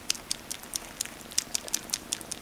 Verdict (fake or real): fake